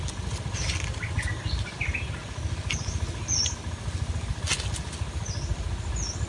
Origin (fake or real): real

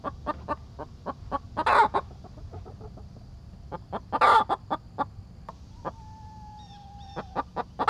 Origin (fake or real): real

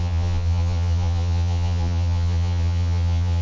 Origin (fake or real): fake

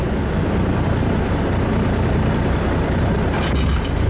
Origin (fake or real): real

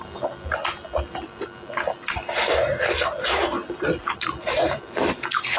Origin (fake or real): real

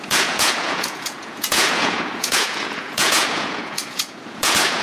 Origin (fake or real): fake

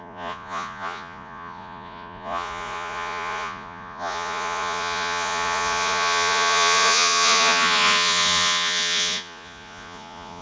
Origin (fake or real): fake